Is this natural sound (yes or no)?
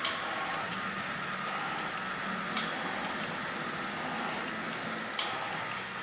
yes